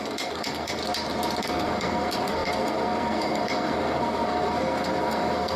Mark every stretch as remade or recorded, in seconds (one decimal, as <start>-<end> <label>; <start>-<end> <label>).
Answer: 0.0-0.8 remade; 0.8-1.4 recorded; 1.4-5.6 remade

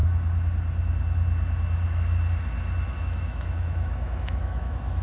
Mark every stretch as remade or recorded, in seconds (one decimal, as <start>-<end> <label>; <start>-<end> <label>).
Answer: 0.0-3.0 recorded; 3.0-5.0 remade

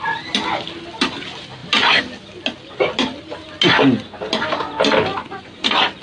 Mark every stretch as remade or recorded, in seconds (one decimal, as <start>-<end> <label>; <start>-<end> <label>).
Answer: 0.0-5.1 recorded; 5.1-5.6 remade; 5.6-6.0 recorded

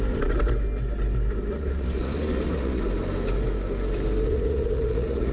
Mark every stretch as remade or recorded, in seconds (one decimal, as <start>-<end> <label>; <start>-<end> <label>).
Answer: 0.0-1.5 recorded; 1.5-2.8 remade; 2.8-4.3 recorded; 4.3-5.3 remade

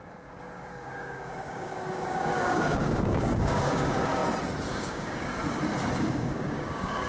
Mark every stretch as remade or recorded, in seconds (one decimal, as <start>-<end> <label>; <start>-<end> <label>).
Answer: 0.0-4.2 remade; 4.2-4.7 recorded; 4.7-5.4 remade; 5.4-5.9 recorded; 5.9-7.1 remade

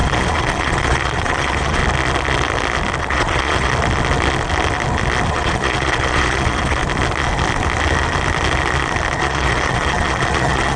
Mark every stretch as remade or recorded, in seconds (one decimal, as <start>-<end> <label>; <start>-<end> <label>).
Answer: 0.0-1.8 remade; 1.8-3.0 recorded; 3.0-3.7 remade; 3.7-5.3 recorded; 5.3-6.8 remade; 6.8-9.2 recorded; 9.2-10.8 remade